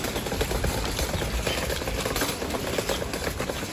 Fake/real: real